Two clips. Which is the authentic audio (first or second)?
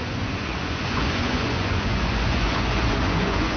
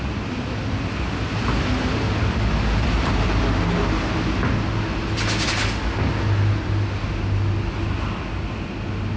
second